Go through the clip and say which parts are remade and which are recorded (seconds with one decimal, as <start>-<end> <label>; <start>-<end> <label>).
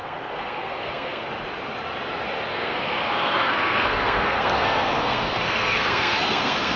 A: 0.0-1.3 remade; 1.3-2.5 recorded; 2.5-6.8 remade